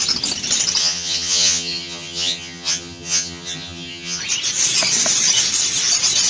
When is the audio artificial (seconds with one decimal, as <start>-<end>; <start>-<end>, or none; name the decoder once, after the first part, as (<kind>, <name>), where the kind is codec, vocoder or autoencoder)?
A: 0.8-4.2 (vocoder, HiFi-GAN)

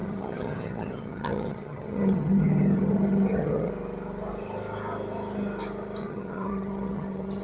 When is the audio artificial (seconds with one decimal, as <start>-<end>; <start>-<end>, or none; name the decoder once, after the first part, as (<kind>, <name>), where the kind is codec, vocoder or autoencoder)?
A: 0.0-3.7 (vocoder, HiFi-GAN); 6.0-7.4

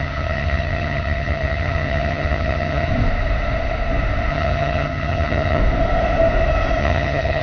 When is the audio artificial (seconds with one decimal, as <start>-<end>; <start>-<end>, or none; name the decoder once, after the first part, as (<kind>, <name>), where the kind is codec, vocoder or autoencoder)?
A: 0.0-2.9 (vocoder, HiFi-GAN); 4.3-5.6; 6.8-7.4